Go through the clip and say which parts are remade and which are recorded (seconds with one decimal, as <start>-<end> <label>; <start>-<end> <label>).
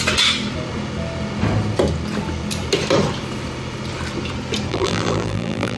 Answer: 0.0-4.7 recorded; 4.7-5.8 remade